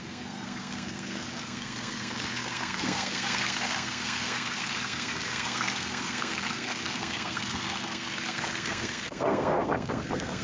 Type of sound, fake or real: fake